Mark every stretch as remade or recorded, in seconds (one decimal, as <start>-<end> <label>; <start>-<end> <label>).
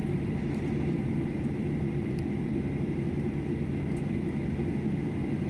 0.0-3.3 remade; 3.3-5.5 recorded